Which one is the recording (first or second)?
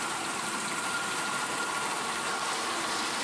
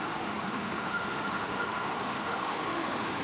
first